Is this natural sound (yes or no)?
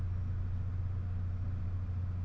yes